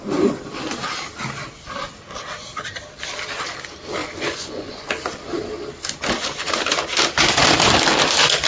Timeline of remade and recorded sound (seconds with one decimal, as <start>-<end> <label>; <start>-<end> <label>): 0.0-4.0 recorded; 4.0-4.9 remade; 4.9-8.5 recorded